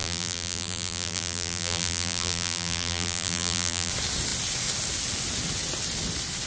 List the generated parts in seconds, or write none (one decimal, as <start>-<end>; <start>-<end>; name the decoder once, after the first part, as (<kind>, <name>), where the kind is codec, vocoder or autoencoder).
0.0-3.9 (vocoder, BigVGAN v2)

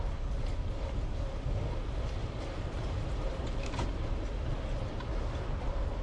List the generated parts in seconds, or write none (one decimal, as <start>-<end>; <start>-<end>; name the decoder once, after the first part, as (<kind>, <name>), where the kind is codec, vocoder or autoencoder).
2.2-4.4 (vocoder, BigVGAN v2)

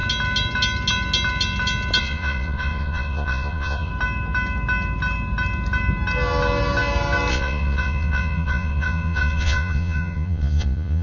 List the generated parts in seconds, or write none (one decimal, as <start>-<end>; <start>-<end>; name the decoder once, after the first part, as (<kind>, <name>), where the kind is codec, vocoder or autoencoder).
2.0-3.9 (vocoder, Vocos); 7.3-11.0

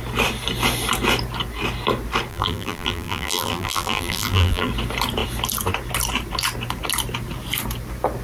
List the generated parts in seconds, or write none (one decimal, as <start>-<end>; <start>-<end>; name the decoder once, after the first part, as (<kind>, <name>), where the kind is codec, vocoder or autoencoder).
2.3-4.7 (vocoder, BigVGAN v2)

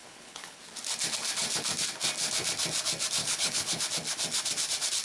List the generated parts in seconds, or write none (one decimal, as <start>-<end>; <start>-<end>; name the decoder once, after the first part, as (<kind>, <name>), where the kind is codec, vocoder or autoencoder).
0.0-0.6 (codec, HILCodec); 3.2-3.8

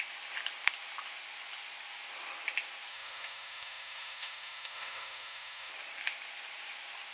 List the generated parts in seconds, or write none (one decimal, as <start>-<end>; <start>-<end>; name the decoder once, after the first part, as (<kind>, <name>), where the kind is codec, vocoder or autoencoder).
2.9-5.7 (autoencoder, DAC-VAE)

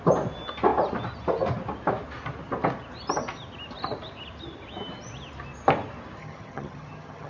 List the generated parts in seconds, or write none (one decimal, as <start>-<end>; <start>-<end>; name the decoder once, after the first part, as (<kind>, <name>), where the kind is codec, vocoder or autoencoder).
6.2-7.3 (vocoder, HiFi-GAN)

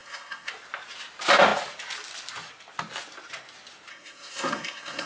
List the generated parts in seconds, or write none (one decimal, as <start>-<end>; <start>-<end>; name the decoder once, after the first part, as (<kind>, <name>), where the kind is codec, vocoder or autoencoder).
0.0-0.5 (codec, SNAC); 3.9-5.1